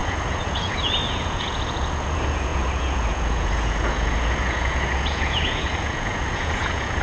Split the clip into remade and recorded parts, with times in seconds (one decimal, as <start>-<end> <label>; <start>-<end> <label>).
0.0-7.0 remade